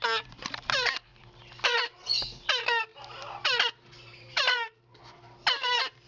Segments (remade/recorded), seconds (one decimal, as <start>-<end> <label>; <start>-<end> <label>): 0.0-6.1 recorded